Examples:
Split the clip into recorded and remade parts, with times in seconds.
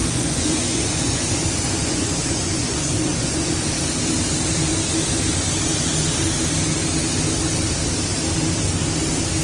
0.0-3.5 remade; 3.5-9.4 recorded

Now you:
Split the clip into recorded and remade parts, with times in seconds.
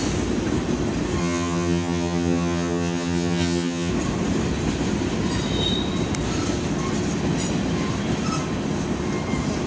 0.0-1.2 recorded; 1.2-3.9 remade; 3.9-9.7 recorded